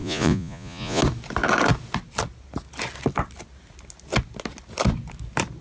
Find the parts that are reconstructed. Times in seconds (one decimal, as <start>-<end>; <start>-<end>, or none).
0.0-1.0